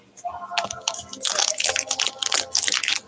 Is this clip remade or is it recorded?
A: recorded